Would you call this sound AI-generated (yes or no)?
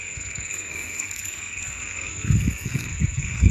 yes